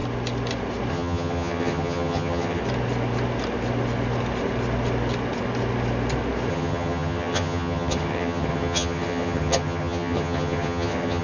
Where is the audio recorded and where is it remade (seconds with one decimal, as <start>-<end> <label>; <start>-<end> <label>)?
0.0-0.9 recorded; 0.9-2.6 remade; 2.6-6.5 recorded; 6.5-11.2 remade

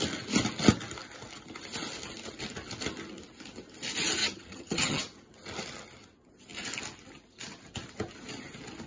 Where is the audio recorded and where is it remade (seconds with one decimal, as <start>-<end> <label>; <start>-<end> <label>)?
0.0-4.2 recorded; 4.2-5.0 remade; 5.0-8.9 recorded

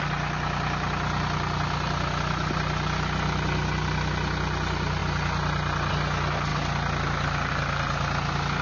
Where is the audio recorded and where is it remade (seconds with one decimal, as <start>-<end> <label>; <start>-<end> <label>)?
0.0-8.6 recorded

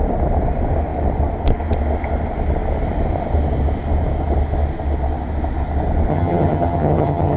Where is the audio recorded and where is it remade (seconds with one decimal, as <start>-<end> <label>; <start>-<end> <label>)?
0.0-6.1 recorded; 6.1-7.4 remade